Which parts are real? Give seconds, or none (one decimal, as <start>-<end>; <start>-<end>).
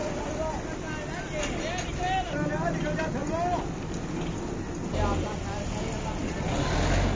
0.0-7.2